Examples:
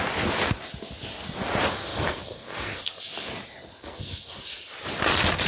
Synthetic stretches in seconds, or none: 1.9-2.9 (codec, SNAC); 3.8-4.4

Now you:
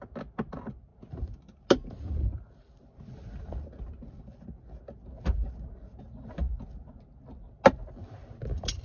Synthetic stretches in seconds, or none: none

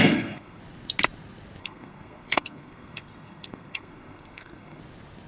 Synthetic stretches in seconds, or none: 0.0-0.6 (codec, SNAC); 1.6-4.8

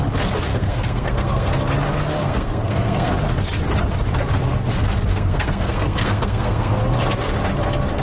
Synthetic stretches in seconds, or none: 0.5-1.5 (codec, SNAC); 2.2-3.1; 5.1-6.8

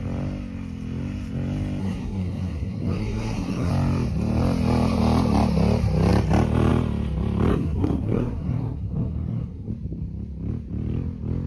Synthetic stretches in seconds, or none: 1.8-3.7 (codec, SNAC); 7.5-9.7

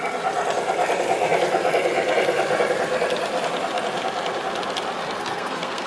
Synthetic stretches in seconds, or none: 5.2-5.9 (codec, SNAC)